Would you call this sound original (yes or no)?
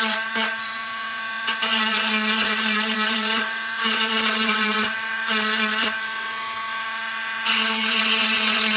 no